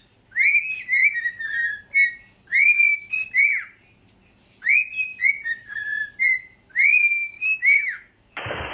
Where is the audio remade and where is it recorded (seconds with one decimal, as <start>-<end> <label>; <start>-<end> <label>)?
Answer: 0.0-7.1 recorded; 7.1-8.7 remade